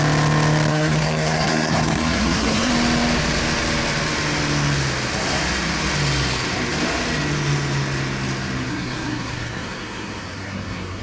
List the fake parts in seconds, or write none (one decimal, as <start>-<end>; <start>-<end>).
0.7-2.7; 8.7-11.0